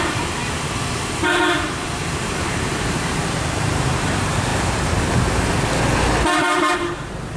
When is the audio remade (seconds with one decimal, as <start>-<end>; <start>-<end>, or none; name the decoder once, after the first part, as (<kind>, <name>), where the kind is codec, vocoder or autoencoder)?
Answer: 0.0-0.4 (vocoder, BigVGAN v2); 1.2-4.5; 6.4-7.4